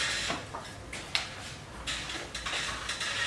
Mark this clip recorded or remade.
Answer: recorded